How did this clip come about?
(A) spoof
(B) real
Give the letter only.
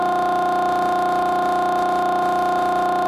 B